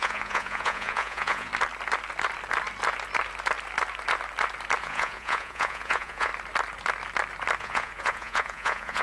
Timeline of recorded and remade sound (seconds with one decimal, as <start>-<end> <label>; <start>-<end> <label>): 0.0-1.5 remade; 1.5-4.8 recorded; 4.8-6.3 remade; 6.3-7.6 recorded; 7.6-9.0 remade